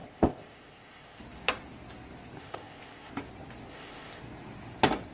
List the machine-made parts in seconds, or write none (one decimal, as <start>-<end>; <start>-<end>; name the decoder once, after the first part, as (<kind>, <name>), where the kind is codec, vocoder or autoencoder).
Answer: 0.0-1.2 (codec, ZipCodec); 2.4-3.1; 3.7-4.2